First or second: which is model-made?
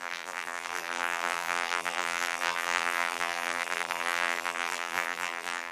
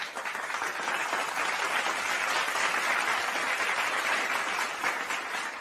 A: first